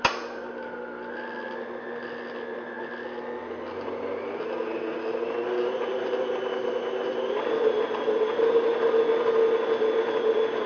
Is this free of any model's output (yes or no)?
yes